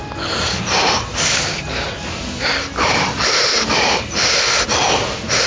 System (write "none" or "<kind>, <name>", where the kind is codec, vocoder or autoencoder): vocoder, BigVGAN v2